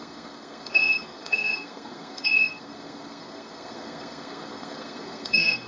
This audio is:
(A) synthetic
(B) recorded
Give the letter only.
A